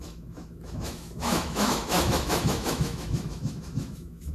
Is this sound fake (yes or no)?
yes